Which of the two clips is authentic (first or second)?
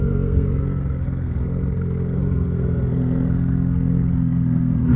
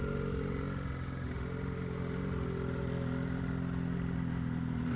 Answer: second